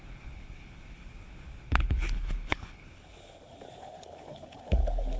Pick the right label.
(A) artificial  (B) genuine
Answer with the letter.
A